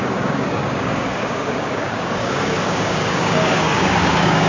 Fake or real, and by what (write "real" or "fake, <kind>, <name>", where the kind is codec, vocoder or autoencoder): fake, codec, DAC